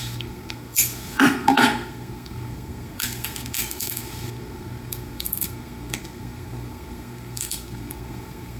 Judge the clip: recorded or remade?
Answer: remade